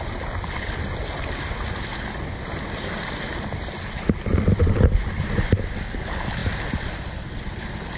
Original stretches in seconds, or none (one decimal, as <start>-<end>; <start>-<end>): 0.0-8.0